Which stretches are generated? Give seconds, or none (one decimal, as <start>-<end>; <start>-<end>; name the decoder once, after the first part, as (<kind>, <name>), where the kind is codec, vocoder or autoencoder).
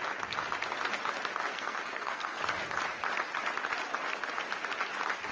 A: 1.5-2.4 (codec, SNAC)